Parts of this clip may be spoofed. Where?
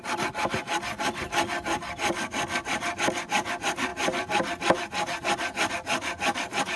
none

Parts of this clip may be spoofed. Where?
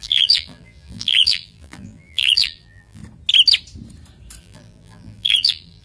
0.0-3.0 (vocoder, BigVGAN v2); 4.4-5.8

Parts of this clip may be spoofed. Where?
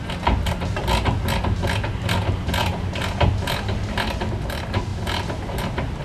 none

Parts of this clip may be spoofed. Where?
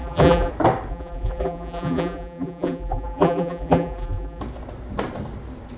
0.0-0.5 (vocoder, BigVGAN v2); 0.9-4.4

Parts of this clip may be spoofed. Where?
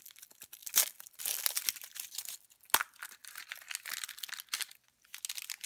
none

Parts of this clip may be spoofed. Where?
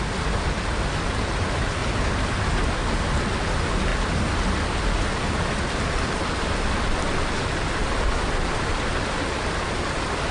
0.0-1.8 (vocoder, BigVGAN v2); 2.5-3.9; 4.8-10.3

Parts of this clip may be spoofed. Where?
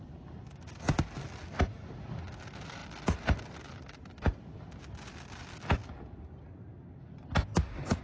none